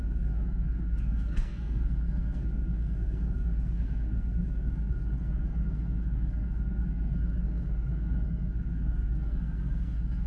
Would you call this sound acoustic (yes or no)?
no